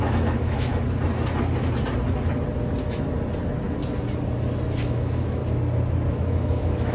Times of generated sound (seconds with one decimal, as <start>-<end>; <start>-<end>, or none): 0.0-0.7; 4.8-5.4; 6.1-6.9